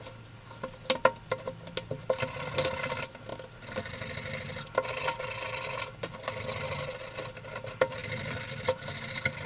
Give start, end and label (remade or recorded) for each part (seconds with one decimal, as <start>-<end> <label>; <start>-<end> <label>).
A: 0.0-8.0 recorded; 8.0-8.6 remade; 8.6-9.5 recorded